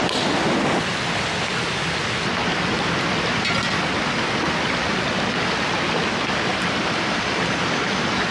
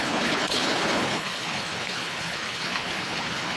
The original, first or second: first